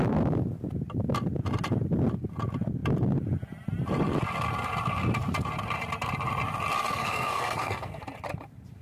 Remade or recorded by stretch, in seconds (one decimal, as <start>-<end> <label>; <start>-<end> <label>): 0.0-6.9 recorded; 6.9-8.0 remade; 8.0-8.8 recorded